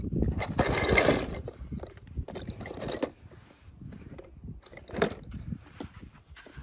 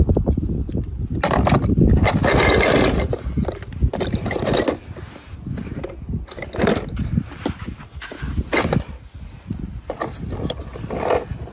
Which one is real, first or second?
second